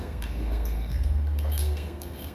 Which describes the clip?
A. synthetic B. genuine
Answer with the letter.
A